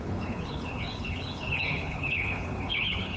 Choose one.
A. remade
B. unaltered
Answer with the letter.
A